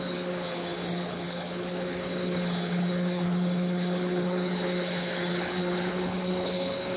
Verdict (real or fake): fake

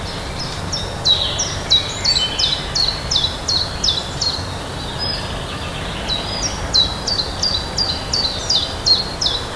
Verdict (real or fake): real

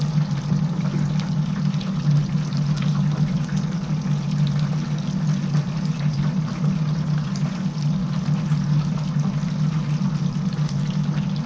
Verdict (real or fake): real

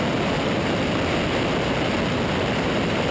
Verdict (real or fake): real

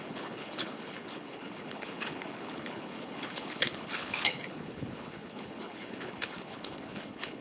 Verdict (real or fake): fake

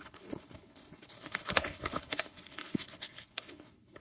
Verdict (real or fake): fake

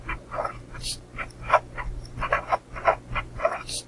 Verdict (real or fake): real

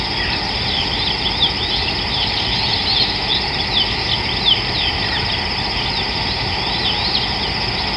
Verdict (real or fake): real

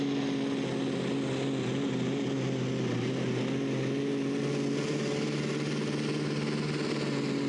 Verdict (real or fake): real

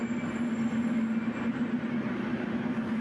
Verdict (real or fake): real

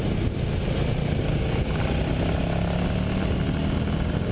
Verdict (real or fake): real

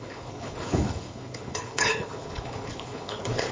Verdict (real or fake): fake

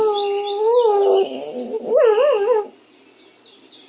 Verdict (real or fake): real